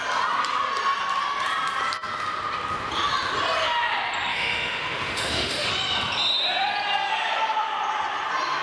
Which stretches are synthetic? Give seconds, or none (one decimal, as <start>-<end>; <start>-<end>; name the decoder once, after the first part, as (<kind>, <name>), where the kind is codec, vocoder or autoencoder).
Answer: 4.3-5.7 (autoencoder, DAC-VAE)